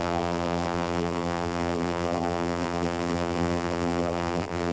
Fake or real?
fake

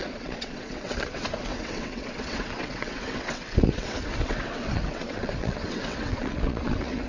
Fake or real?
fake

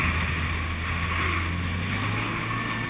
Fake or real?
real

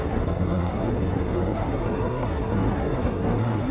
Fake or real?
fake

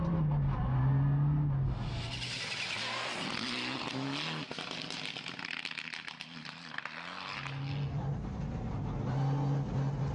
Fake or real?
real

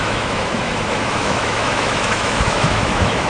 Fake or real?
fake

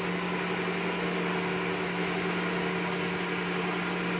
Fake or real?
real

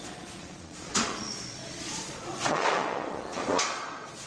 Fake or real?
fake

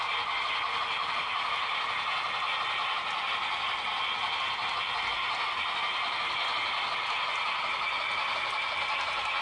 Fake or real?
real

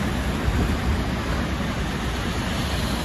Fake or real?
real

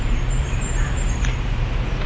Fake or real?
fake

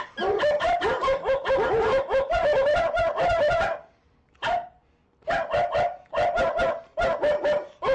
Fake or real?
real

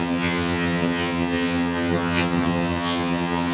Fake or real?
fake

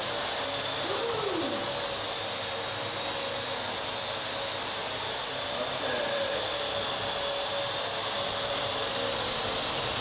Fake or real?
real